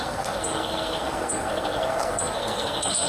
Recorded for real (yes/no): no